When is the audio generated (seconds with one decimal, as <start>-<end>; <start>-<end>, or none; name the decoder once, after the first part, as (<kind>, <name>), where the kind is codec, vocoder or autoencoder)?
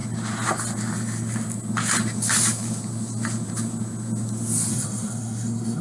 4.7-5.8 (codec, SNAC)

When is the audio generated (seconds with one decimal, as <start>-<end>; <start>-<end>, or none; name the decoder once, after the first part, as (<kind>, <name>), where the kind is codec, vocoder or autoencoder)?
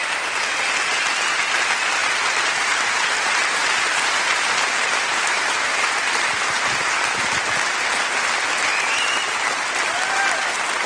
2.0-7.3 (vocoder, BigVGAN v2)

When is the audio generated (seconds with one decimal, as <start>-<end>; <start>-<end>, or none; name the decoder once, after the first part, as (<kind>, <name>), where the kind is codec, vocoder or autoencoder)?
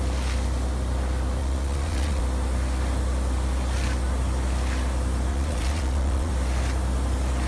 1.4-2.2 (vocoder, Vocos); 5.3-6.3